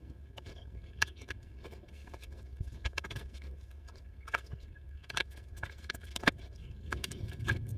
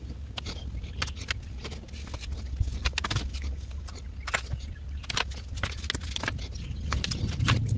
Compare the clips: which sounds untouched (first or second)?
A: second